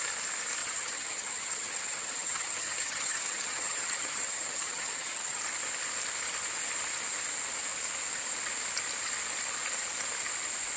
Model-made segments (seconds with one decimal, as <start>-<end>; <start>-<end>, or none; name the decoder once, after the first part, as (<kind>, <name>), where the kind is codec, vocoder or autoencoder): 0.6-5.4 (vocoder, HiFi-GAN)